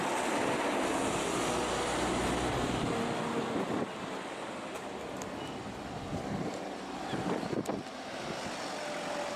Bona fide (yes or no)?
yes